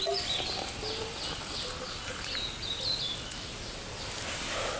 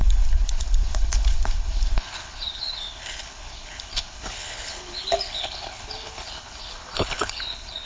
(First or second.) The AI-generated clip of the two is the second